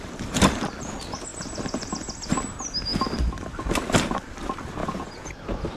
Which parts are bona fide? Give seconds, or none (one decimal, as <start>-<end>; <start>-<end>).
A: 0.0-4.8; 5.3-5.8

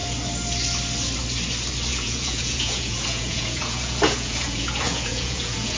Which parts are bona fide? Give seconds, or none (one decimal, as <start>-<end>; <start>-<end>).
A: 0.0-1.9

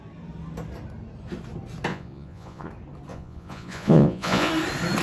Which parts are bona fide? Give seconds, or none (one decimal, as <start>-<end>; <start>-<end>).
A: 0.0-1.9; 2.7-3.1; 4.5-5.0

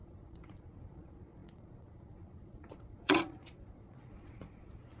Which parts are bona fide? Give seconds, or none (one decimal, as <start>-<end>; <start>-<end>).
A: none